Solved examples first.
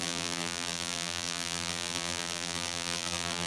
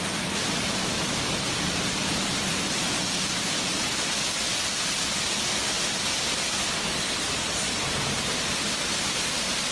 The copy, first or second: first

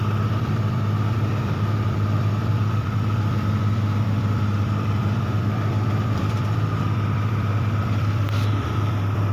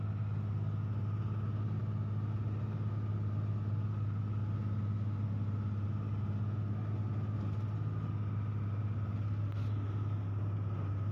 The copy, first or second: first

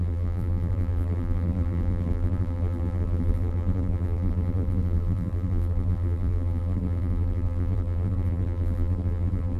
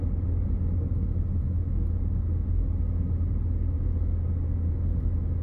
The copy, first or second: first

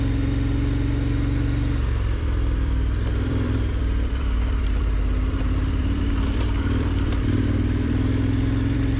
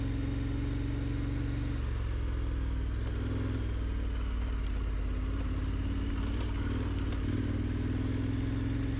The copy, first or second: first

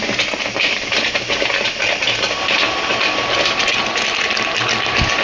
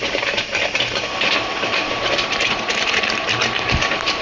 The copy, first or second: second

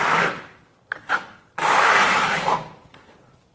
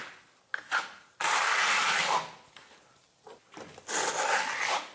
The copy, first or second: first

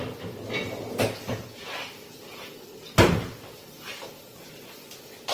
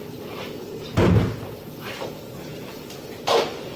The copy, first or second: first